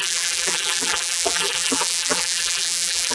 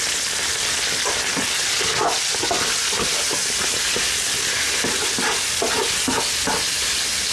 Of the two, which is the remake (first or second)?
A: first